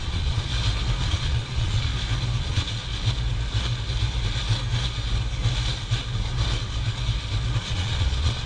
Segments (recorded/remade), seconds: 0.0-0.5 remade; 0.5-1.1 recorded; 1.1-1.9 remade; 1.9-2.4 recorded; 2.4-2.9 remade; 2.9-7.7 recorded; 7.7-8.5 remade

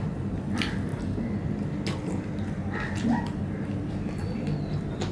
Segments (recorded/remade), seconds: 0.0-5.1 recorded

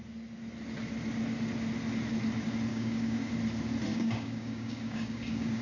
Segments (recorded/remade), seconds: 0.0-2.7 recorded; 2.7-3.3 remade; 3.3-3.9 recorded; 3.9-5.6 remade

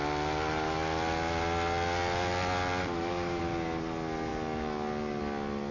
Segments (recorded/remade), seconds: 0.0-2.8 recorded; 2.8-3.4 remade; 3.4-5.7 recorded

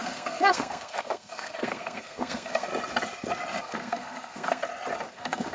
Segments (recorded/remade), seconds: 0.0-2.7 remade; 2.7-3.6 recorded; 3.6-4.6 remade; 4.6-5.1 recorded; 5.1-5.5 remade

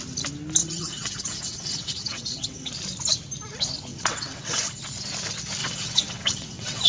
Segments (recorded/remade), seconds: 0.0-0.6 recorded; 0.6-2.7 remade; 2.7-3.9 recorded; 3.9-4.8 remade; 4.8-5.6 recorded; 5.6-6.9 remade

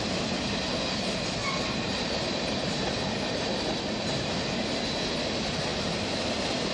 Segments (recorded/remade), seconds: 0.0-1.4 recorded; 1.4-3.4 remade; 3.4-6.7 recorded

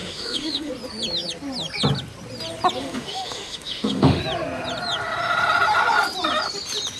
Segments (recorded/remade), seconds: 0.0-0.7 remade; 0.7-2.8 recorded; 2.8-4.2 remade; 4.2-7.0 recorded